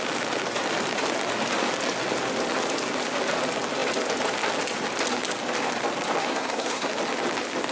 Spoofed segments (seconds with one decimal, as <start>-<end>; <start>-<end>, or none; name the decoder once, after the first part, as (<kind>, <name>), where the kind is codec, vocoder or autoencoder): 6.2-6.9 (codec, SNAC)